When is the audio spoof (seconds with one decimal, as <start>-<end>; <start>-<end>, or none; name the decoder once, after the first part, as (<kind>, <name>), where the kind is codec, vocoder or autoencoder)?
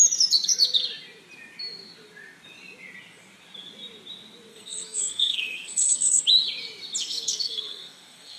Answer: 4.5-6.2 (codec, SNAC); 7.0-8.4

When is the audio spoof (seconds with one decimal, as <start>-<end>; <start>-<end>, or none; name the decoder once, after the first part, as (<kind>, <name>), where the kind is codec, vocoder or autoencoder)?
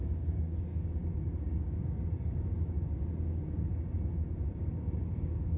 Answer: 0.0-3.7 (codec, DAC); 4.5-5.6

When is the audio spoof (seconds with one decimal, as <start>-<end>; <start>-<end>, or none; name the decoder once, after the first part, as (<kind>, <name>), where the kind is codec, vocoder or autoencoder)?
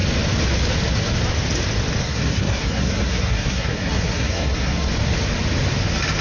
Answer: 2.0-4.9 (codec, SNAC)